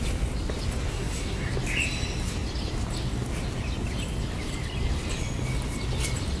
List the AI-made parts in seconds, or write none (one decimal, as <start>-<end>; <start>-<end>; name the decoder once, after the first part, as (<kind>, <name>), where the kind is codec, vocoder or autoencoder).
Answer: 0.9-1.5 (codec, SNAC)

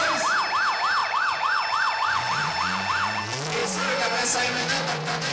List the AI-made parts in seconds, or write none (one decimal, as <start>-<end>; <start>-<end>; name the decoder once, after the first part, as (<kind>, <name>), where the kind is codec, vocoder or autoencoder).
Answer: 1.0-3.2 (vocoder, Vocos); 3.6-5.3

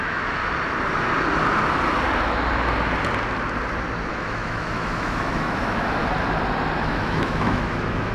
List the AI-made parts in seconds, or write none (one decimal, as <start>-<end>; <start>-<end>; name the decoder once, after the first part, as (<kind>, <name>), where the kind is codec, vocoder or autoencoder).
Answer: 0.0-0.4 (autoencoder, DAC-VAE); 4.1-6.0; 6.8-8.1